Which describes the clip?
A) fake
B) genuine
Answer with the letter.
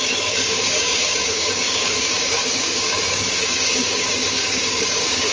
A